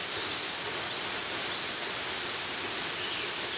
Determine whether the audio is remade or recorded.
recorded